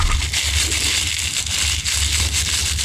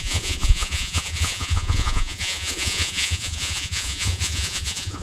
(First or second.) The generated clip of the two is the second